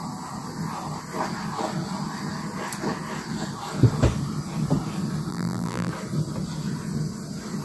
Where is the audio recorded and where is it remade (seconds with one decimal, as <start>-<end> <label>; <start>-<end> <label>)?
0.0-5.3 recorded; 5.3-5.9 remade; 5.9-7.6 recorded